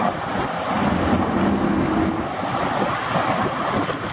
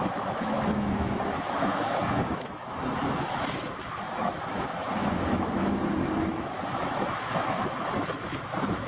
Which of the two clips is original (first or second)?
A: first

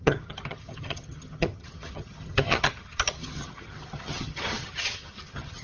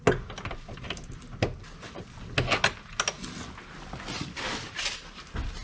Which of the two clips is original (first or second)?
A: second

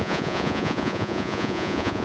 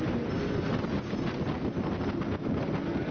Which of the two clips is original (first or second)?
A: second